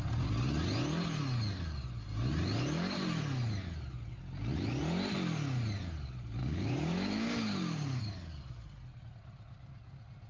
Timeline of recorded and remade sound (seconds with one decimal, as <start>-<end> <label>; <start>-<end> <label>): 0.0-6.4 recorded; 6.4-8.0 remade; 8.0-10.3 recorded